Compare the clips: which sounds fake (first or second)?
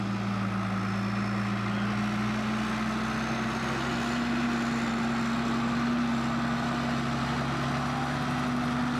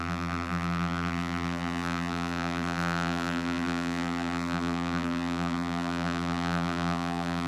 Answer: second